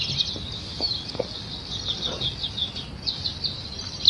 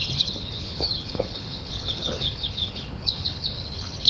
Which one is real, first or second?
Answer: first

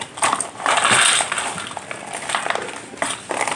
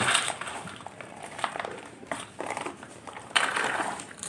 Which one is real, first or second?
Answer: first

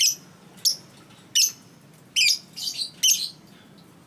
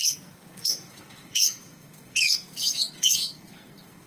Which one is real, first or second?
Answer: first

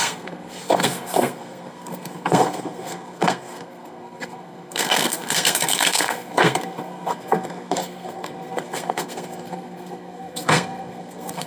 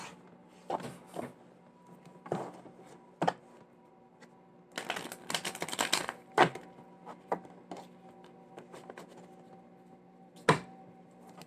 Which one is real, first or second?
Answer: second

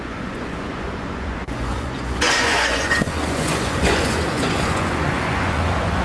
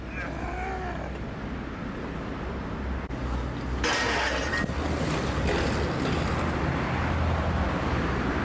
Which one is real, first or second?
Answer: second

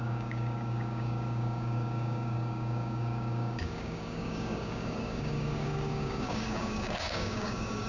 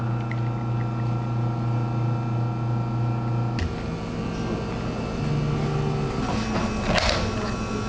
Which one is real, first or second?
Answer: second